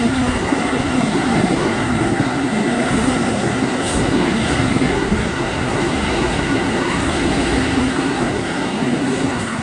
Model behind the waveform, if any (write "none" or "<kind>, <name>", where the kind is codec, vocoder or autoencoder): codec, SNAC